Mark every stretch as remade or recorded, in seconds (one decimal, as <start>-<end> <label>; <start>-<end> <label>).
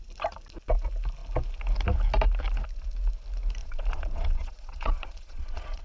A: 0.0-3.6 recorded; 3.6-5.8 remade